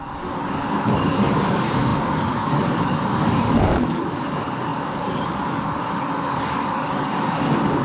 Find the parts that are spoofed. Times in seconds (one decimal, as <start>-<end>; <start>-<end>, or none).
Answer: 0.0-7.8